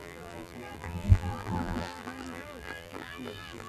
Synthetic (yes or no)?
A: yes